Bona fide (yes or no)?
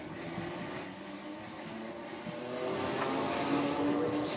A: yes